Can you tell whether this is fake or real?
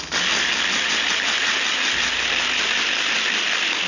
real